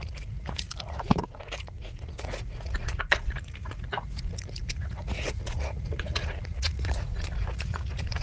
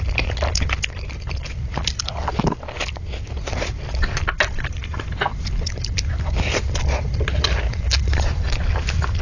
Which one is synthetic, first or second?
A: first